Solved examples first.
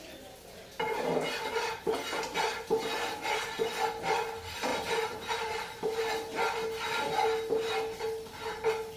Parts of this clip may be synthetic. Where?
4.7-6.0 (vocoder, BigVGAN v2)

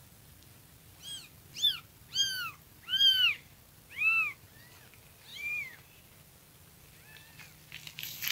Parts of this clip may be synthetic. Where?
5.3-6.0 (vocoder, BigVGAN v2)

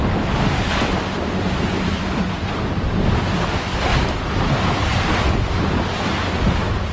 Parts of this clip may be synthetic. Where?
none

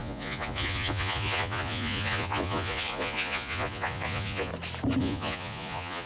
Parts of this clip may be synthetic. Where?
0.0-4.5 (vocoder, Vocos); 5.0-6.1

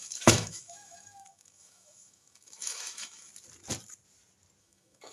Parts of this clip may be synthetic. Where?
0.0-3.3 (autoencoder, DAC-VAE); 4.6-5.1

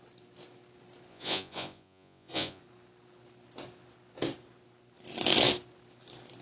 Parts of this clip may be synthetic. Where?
1.1-2.6 (vocoder, Vocos)